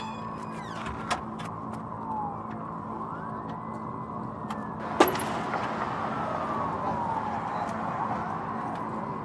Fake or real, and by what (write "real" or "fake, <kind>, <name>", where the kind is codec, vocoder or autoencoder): real